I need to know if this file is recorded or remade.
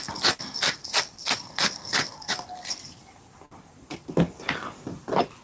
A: recorded